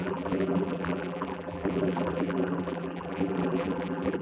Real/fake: fake